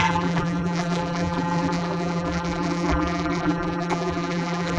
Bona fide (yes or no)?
no